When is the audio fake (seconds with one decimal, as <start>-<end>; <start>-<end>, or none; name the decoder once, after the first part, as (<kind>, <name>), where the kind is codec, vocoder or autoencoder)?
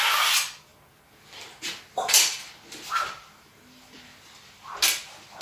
none